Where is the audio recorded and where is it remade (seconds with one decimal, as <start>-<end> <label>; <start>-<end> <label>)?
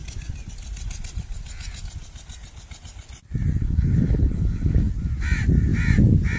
0.0-3.6 recorded; 3.6-4.9 remade; 4.9-6.4 recorded